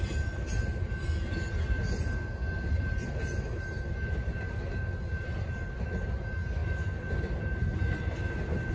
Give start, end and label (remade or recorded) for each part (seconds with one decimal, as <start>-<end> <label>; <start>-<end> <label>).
0.0-8.7 recorded